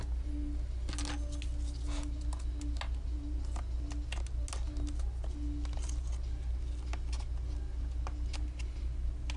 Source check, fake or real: real